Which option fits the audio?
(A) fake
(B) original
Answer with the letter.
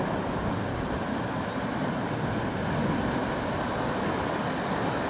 B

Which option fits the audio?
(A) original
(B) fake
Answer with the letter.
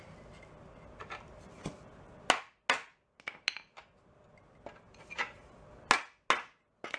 A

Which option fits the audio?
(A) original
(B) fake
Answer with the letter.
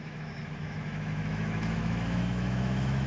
B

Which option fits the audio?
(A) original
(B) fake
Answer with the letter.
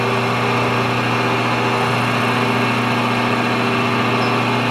A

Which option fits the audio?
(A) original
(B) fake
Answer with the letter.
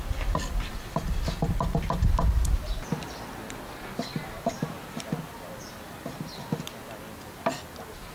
A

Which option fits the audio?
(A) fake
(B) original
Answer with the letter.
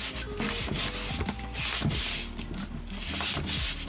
B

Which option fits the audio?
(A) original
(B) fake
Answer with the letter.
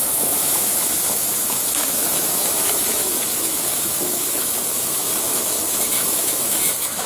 B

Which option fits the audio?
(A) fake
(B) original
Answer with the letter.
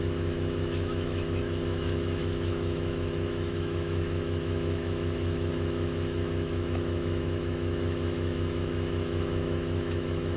A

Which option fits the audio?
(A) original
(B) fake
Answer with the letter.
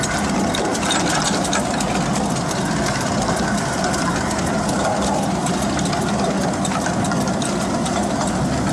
A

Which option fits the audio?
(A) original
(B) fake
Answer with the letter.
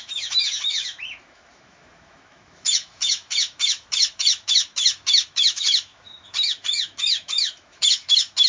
B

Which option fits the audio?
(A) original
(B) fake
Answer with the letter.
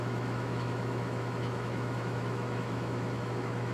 B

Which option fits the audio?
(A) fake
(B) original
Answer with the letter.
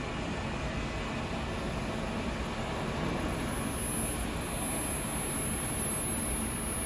B